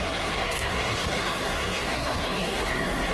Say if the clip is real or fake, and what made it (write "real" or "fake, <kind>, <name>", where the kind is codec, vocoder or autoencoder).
fake, codec, SNAC